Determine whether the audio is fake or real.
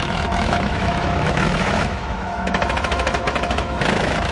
fake